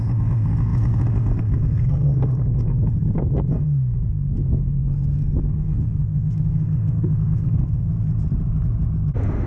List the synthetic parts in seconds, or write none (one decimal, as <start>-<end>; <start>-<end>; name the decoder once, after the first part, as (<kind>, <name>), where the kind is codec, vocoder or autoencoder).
0.0-7.9 (codec, SNAC)

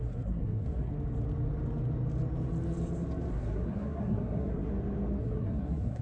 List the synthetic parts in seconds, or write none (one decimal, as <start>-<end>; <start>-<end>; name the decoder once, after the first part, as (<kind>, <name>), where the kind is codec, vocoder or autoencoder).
0.0-0.9 (codec, SNAC); 3.3-4.7; 5.2-6.0

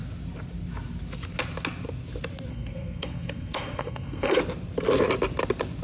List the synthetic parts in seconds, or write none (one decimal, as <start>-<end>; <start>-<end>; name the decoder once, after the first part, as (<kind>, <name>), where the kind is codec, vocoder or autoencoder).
2.5-4.4 (codec, SNAC)

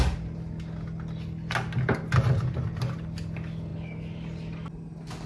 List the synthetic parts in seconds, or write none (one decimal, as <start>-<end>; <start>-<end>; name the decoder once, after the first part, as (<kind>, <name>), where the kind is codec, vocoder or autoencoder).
none

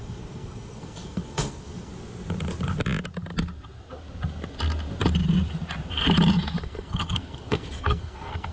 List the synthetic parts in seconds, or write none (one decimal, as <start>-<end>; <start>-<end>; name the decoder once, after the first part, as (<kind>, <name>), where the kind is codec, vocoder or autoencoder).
0.0-1.9 (codec, SNAC); 6.6-8.5

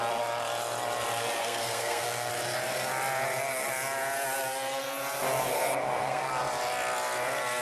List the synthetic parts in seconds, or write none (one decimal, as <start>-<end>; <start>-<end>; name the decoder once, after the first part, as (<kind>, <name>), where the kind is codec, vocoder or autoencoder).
1.4-2.3 (codec, SNAC); 5.5-6.3

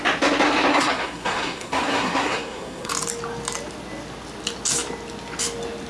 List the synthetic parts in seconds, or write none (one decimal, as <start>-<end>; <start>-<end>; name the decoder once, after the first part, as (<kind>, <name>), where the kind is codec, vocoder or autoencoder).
0.7-2.9 (codec, SNAC)

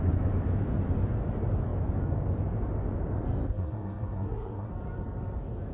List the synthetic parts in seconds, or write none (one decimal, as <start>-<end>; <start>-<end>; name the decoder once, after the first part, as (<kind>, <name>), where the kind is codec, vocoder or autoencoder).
3.5-4.7 (codec, SNAC)